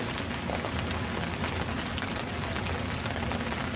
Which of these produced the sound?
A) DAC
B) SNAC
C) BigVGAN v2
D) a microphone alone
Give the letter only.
C